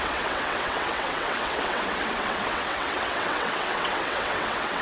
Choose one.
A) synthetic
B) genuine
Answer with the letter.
A